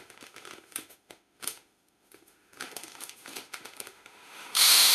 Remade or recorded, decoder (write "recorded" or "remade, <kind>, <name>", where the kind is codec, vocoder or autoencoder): remade, autoencoder, DAC-VAE